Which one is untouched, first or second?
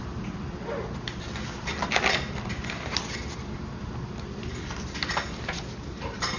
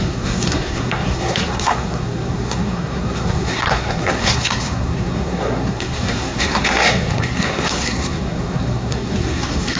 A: first